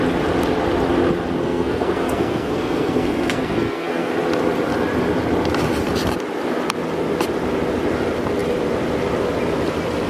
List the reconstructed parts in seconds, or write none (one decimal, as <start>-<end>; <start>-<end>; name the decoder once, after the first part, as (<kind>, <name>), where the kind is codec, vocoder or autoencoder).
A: 1.4-4.1 (codec, SNAC)